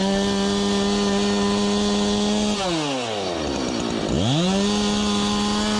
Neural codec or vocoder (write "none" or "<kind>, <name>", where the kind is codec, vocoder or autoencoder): none